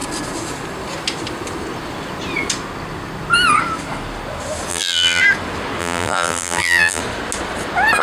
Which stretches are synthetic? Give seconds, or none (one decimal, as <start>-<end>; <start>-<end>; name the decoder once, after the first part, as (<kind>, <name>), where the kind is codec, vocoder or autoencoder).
4.7-5.2 (vocoder, BigVGAN v2); 5.8-7.0